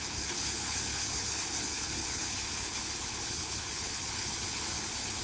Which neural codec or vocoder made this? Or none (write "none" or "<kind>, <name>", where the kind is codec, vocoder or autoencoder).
codec, HILCodec